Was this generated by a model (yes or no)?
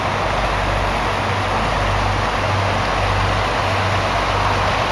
no